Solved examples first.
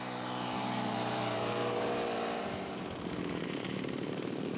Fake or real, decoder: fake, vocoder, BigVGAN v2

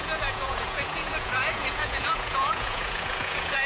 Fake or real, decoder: fake, vocoder, Vocos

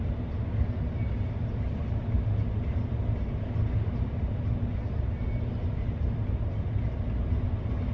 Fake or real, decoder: real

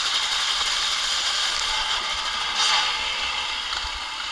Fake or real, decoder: real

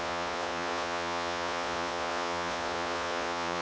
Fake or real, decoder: fake, vocoder, Vocos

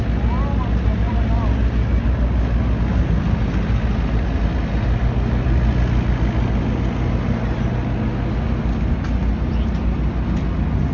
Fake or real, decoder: real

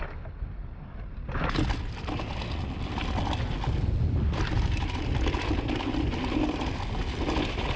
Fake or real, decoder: real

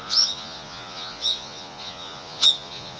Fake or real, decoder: fake, vocoder, Vocos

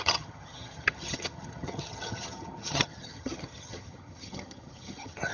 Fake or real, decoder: fake, vocoder, HiFi-GAN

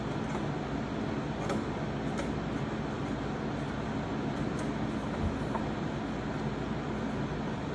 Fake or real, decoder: real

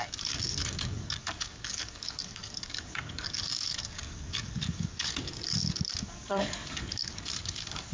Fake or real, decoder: fake, codec, DAC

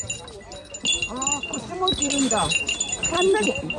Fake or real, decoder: real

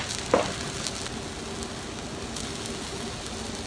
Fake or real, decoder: real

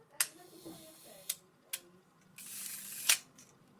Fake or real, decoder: real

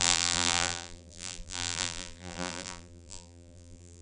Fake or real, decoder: fake, vocoder, BigVGAN v2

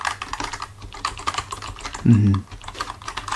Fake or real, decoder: real